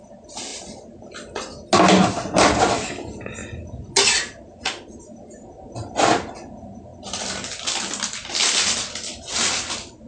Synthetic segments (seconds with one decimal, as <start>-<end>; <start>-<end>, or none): none